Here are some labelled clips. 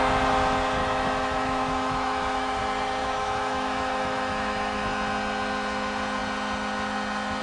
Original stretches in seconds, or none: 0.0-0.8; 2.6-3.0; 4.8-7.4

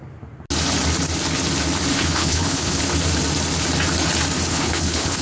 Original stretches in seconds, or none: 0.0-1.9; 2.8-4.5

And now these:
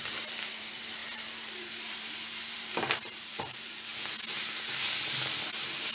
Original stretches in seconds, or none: 3.9-5.9

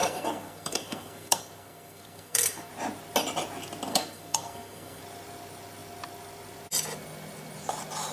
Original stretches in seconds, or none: 2.7-3.9; 5.0-8.1

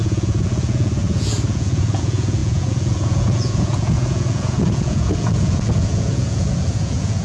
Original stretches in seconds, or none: none

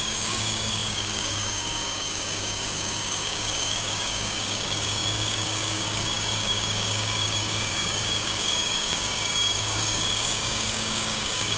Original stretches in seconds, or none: none

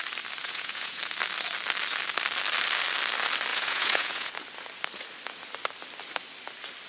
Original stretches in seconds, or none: 0.0-0.4; 1.0-3.5; 4.3-6.9

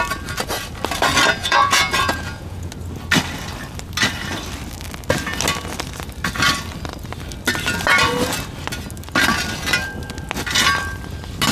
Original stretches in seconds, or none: 0.0-1.4; 2.7-11.5